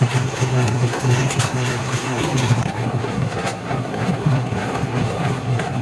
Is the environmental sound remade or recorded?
remade